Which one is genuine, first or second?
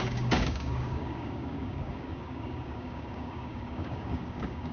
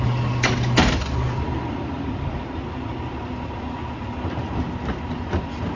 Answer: second